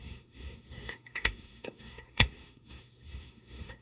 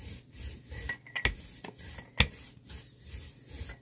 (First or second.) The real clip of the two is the second